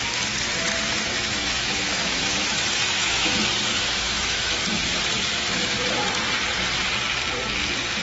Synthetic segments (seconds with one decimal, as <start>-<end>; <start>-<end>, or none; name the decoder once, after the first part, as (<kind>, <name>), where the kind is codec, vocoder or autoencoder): 1.1-3.3 (autoencoder, DAC-VAE); 3.7-4.6; 5.3-5.8